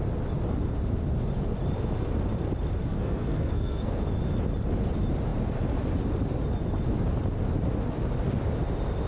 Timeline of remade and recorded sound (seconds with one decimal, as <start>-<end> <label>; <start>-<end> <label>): 0.0-2.8 recorded; 2.8-4.0 remade; 4.0-9.1 recorded